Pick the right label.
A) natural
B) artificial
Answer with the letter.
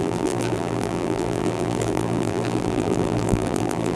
B